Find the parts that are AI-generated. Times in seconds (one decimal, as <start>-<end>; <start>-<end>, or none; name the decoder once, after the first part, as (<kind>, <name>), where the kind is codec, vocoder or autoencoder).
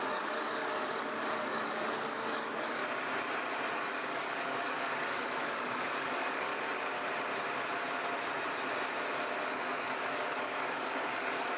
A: 0.0-2.8 (codec, DAC); 3.7-6.5; 9.4-11.6